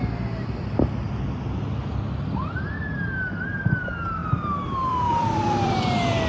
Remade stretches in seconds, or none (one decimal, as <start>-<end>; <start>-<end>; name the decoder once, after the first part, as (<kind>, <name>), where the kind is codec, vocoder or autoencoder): 4.2-5.7 (vocoder, BigVGAN v2)